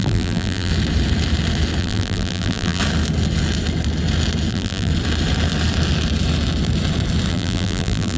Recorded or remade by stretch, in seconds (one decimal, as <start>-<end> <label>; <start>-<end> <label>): 0.0-0.7 remade; 0.7-1.8 recorded; 1.8-2.8 remade; 2.8-4.5 recorded; 4.5-4.9 remade; 4.9-7.3 recorded; 7.3-8.2 remade